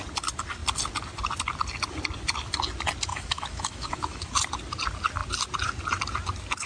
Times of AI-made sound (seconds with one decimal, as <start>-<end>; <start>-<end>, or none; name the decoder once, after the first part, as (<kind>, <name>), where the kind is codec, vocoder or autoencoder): 3.1-4.3 (autoencoder, DAC-VAE)